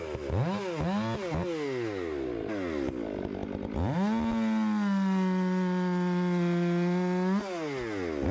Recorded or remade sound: recorded